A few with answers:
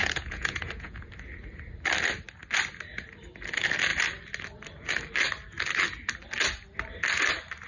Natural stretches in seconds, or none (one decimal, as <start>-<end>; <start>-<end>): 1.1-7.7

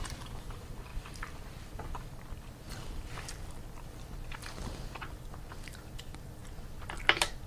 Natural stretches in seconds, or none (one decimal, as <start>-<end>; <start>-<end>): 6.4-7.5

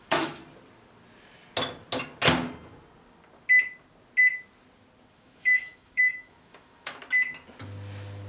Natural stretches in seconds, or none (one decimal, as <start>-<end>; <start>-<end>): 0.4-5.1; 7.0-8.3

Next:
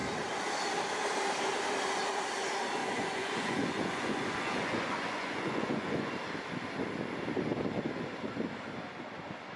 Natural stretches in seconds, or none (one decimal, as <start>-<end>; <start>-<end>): 0.0-2.8; 6.1-9.6

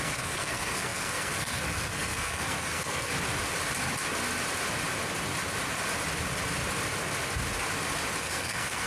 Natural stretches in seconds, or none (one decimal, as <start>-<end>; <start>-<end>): 3.1-8.2

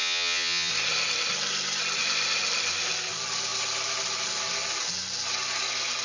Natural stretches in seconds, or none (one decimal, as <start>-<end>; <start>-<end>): 0.7-6.0

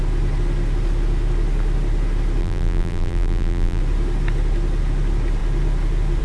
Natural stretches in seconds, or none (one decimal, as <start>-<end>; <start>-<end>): 0.0-2.4; 3.8-6.2

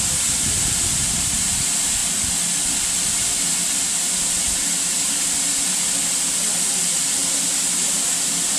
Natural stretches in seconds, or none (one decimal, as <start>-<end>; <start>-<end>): 0.0-8.6